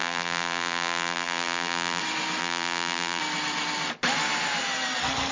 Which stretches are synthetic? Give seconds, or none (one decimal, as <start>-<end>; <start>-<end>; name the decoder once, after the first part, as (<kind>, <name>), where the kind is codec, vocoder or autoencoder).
0.0-2.0 (vocoder, BigVGAN v2); 2.4-3.2